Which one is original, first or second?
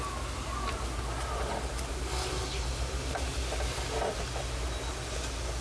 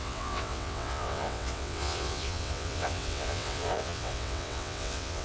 first